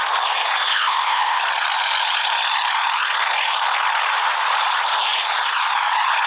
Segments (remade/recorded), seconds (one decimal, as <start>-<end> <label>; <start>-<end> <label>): 0.0-0.7 recorded; 0.7-1.4 remade; 1.4-6.3 recorded